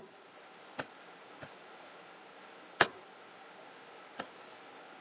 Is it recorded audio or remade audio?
recorded